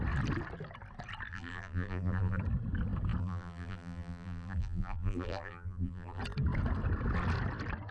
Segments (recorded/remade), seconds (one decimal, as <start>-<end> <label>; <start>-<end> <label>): 0.0-1.3 recorded; 1.3-2.4 remade; 2.4-3.2 recorded; 3.2-6.2 remade; 6.2-7.9 recorded